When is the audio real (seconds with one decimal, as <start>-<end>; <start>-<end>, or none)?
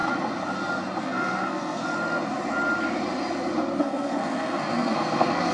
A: 0.0-1.0; 1.8-3.8